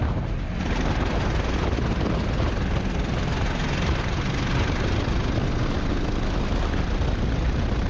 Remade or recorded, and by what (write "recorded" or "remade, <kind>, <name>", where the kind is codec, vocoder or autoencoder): recorded